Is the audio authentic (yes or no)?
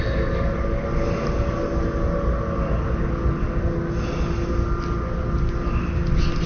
yes